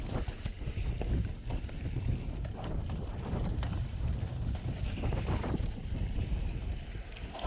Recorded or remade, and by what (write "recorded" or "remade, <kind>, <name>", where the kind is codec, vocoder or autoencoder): remade, vocoder, BigVGAN v2